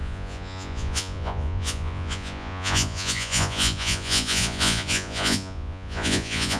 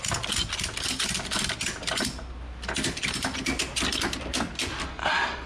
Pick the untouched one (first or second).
second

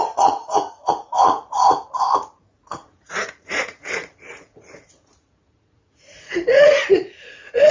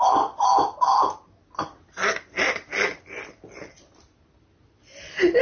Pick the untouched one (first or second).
second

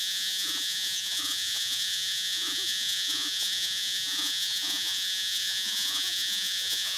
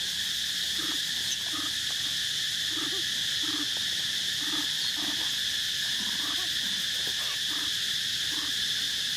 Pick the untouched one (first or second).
second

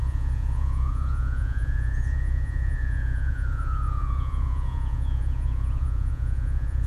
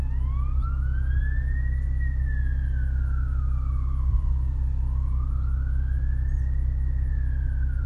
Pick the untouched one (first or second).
second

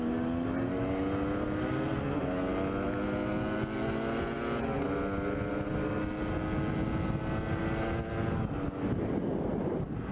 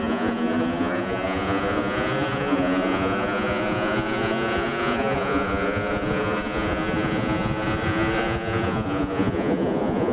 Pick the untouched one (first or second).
first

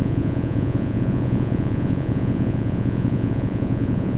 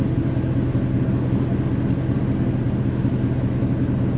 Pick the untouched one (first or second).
second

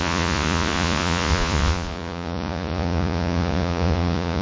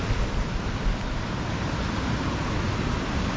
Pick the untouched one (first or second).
second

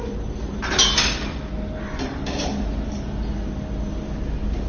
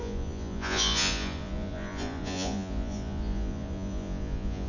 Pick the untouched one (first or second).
first